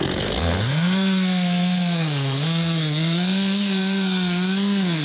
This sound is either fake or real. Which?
fake